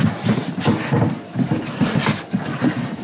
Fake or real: real